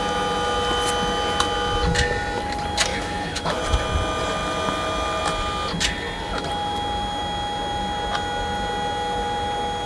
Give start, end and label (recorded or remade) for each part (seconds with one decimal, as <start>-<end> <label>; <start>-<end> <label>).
0.0-2.9 recorded; 2.9-3.6 remade; 3.6-9.9 recorded